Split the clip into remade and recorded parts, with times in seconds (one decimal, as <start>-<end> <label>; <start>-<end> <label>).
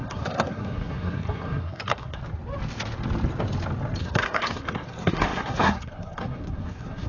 0.0-2.2 remade; 2.2-4.0 recorded; 4.0-7.1 remade